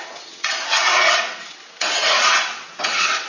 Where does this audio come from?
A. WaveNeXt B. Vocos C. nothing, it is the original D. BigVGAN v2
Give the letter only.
A